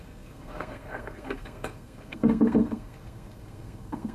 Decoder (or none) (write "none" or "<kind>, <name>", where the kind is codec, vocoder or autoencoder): codec, SNAC